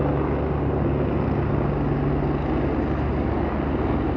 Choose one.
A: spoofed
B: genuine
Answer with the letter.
B